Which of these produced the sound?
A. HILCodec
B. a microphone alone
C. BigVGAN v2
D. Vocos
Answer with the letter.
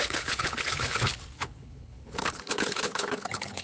A